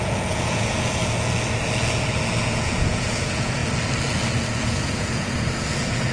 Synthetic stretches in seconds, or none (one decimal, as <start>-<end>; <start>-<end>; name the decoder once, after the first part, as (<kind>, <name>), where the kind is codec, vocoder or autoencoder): 0.0-1.0 (vocoder, Vocos); 2.4-3.6; 4.6-6.1